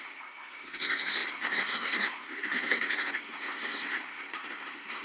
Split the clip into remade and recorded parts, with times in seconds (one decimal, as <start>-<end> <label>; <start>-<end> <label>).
0.0-5.0 remade

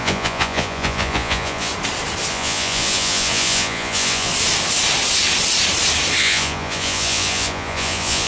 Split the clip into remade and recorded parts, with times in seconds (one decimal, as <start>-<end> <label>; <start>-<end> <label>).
0.0-1.7 remade; 1.7-2.3 recorded; 2.3-4.3 remade; 4.3-6.2 recorded; 6.2-8.3 remade

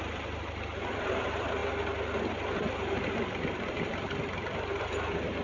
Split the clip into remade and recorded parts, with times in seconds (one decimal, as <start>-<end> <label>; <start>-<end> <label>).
0.0-5.4 remade

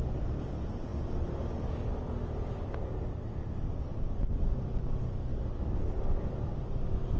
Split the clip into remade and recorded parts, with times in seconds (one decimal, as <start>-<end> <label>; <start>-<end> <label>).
0.0-7.2 recorded

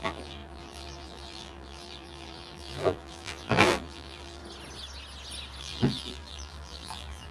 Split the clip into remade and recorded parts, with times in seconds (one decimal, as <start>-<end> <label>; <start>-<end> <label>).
0.0-4.4 remade; 4.4-5.6 recorded; 5.6-7.3 remade

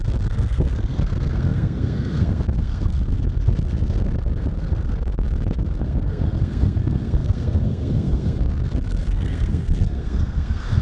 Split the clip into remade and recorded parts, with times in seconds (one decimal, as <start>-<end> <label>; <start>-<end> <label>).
0.0-10.8 remade

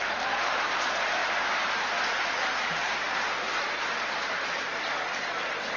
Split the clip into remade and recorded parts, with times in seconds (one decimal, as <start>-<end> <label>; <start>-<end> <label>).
0.0-1.2 remade; 1.2-2.6 recorded; 2.6-4.7 remade; 4.7-5.8 recorded

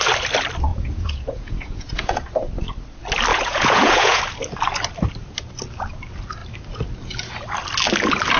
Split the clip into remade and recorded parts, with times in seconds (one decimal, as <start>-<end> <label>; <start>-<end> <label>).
0.0-0.7 recorded; 0.7-2.2 remade; 2.2-3.3 recorded; 3.3-4.2 remade; 4.2-8.4 recorded